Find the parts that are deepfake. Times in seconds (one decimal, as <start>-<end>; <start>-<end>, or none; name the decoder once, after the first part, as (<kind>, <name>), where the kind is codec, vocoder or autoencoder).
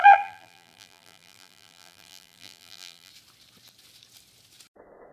0.0-3.1 (vocoder, BigVGAN v2)